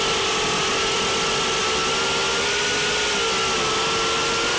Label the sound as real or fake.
real